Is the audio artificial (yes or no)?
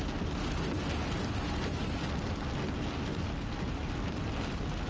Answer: no